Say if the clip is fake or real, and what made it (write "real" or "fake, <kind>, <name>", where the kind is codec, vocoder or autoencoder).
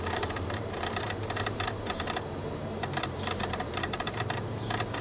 fake, vocoder, BigVGAN v2